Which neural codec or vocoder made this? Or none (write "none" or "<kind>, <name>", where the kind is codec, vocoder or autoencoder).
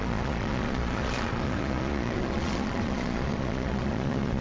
vocoder, Vocos